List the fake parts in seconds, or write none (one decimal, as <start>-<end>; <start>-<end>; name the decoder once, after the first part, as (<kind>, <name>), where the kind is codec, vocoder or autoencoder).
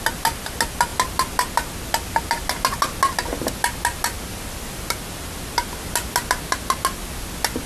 none